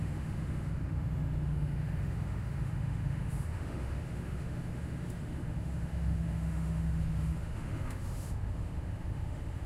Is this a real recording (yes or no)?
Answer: no